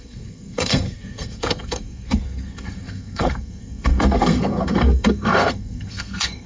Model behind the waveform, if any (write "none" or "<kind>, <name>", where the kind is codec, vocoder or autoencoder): codec, SNAC